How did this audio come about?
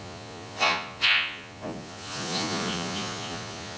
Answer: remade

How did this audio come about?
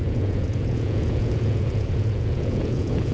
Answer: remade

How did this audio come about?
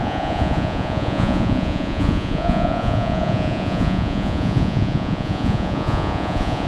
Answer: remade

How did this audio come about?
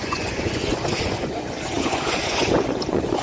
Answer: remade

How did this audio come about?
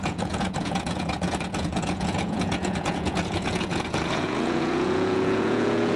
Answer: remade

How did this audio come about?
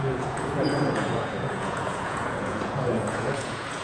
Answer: remade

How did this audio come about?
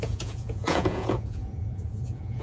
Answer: remade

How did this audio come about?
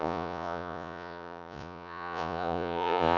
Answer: remade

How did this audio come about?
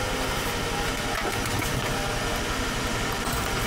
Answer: recorded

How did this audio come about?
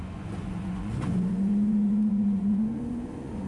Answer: remade